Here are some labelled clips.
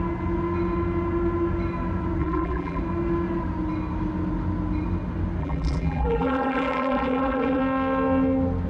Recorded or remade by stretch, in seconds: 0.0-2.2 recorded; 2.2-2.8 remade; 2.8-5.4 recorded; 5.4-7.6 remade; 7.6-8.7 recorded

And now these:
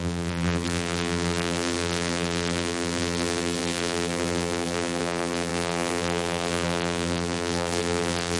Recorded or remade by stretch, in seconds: 0.0-8.4 remade

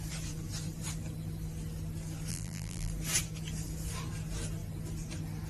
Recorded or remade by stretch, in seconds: 0.0-2.3 recorded; 2.3-2.9 remade; 2.9-5.5 recorded

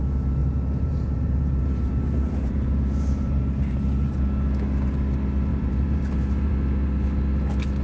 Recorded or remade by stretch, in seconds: 0.0-0.4 recorded; 0.4-4.2 remade; 4.2-5.5 recorded; 5.5-6.5 remade; 6.5-7.8 recorded

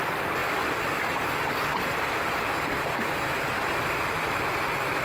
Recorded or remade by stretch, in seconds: 0.0-0.4 recorded; 0.4-3.4 remade; 3.4-5.0 recorded

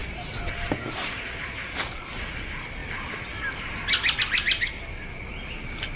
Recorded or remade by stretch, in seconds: 0.0-6.0 recorded

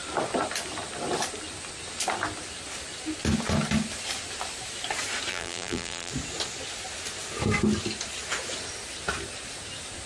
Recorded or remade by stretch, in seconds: 0.0-5.3 recorded; 5.3-6.1 remade; 6.1-10.1 recorded